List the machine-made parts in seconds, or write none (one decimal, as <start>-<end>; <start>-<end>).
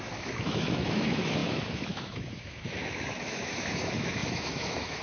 0.0-5.0